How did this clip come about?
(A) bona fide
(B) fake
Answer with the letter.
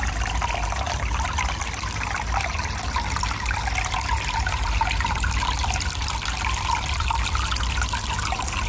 A